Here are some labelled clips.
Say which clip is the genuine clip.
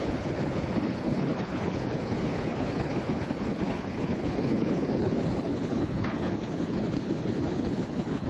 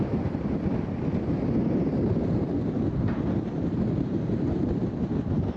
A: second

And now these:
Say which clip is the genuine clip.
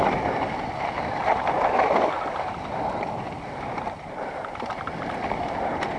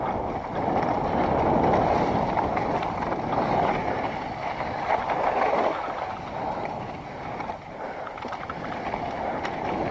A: second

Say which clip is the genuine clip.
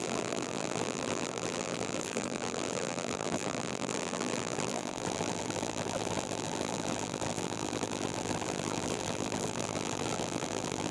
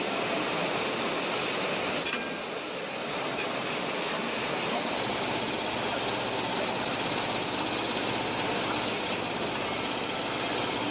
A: second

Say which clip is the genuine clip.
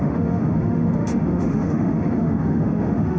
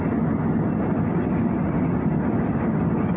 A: second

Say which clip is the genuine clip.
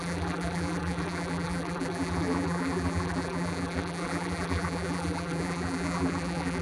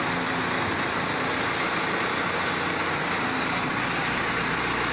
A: second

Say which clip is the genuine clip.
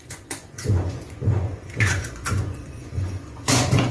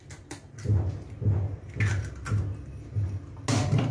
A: second